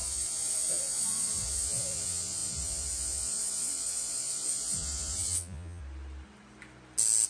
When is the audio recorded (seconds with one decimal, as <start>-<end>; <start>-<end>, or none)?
5.8-7.3